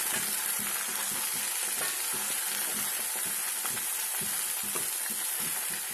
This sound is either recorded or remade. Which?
recorded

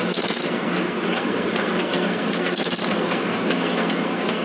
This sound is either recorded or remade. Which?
remade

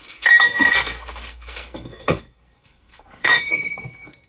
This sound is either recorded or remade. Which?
remade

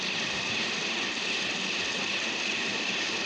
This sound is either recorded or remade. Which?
recorded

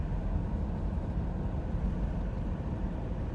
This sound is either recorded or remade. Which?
recorded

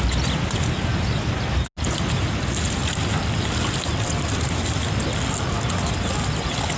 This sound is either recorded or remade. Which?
recorded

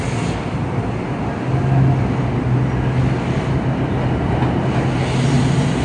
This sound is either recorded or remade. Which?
recorded